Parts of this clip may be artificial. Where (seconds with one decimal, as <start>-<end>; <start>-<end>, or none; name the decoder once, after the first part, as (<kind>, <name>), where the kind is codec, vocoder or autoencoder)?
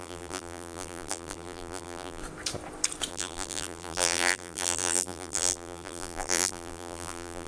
0.0-2.2 (vocoder, BigVGAN v2); 3.1-7.5